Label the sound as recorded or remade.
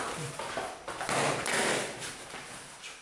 recorded